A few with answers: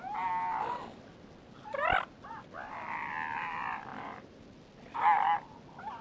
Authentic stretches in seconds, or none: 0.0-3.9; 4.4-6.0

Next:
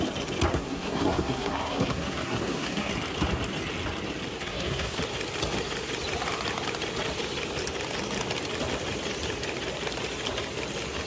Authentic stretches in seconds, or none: 0.0-0.5; 2.9-4.4; 5.0-11.1

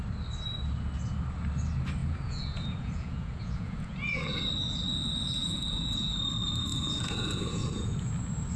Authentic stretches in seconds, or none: 0.0-2.0; 4.4-5.4; 6.1-6.7; 8.1-8.6